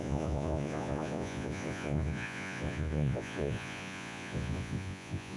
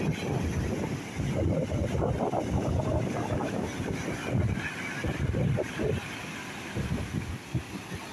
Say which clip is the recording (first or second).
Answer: second